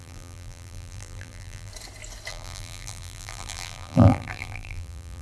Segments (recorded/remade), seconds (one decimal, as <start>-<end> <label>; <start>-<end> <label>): 0.0-1.7 remade; 1.7-2.3 recorded; 2.3-5.2 remade